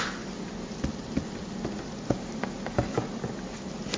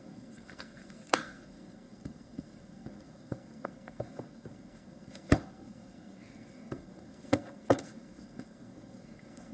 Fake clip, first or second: second